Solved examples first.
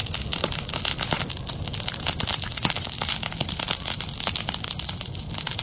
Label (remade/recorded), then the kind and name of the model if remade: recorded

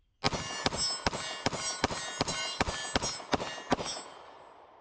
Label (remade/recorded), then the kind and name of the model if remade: recorded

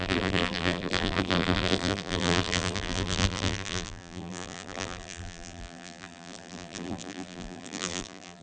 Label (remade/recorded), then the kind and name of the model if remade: remade, vocoder, BigVGAN v2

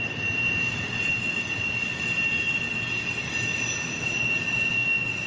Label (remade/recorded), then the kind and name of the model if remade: recorded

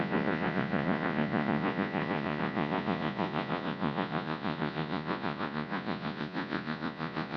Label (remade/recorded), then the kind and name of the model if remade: remade, vocoder, Vocos